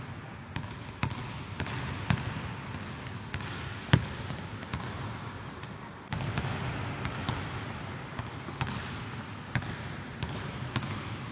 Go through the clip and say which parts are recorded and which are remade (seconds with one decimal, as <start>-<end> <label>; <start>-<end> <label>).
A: 0.0-11.3 recorded